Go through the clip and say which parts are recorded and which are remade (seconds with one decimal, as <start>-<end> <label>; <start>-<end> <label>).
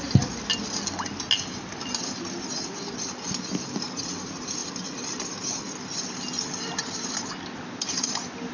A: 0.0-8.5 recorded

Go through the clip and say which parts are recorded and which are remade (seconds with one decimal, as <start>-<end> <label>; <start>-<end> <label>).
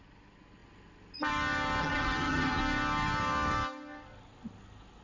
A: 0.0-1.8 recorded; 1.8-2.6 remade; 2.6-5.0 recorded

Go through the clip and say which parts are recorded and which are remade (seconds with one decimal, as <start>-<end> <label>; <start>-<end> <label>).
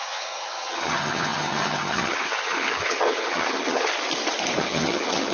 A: 0.0-3.9 remade; 3.9-4.6 recorded; 4.6-5.3 remade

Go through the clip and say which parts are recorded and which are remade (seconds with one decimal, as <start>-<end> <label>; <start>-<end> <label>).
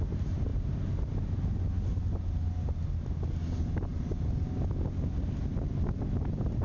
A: 0.0-6.6 recorded